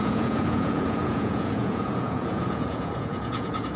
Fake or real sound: fake